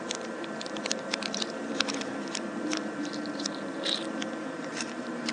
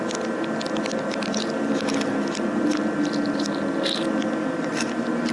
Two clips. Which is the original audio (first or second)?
second